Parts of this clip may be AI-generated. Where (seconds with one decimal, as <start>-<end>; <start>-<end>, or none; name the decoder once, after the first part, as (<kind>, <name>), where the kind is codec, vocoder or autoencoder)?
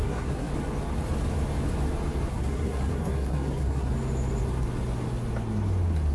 0.0-0.5 (codec, SNAC); 2.3-3.9